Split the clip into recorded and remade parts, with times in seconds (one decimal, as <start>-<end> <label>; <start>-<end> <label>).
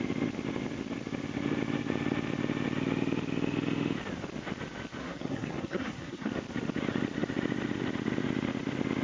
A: 0.0-5.0 recorded; 5.0-6.3 remade; 6.3-9.0 recorded